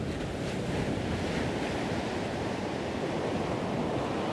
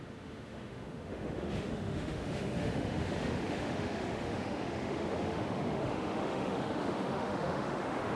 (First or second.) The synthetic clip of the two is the second